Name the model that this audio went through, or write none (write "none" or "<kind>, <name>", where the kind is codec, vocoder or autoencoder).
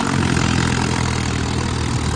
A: none